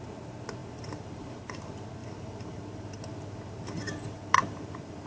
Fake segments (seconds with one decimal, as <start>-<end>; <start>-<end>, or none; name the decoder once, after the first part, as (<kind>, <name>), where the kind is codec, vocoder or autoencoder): 0.6-1.5 (vocoder, BigVGAN v2); 2.0-5.1

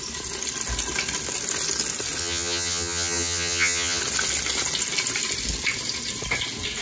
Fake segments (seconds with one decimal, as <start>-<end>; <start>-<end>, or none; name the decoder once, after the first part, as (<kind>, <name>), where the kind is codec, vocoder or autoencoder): 2.2-4.0 (vocoder, HiFi-GAN)

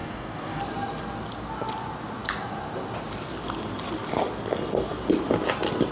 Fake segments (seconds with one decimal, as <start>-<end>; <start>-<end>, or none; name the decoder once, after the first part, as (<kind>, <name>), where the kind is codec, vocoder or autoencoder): 0.0-0.6 (codec, DAC)